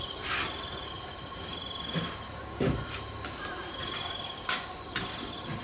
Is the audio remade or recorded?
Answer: recorded